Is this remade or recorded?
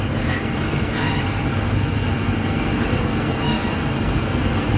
remade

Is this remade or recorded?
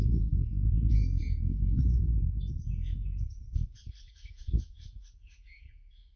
remade